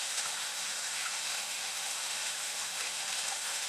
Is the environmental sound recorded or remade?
remade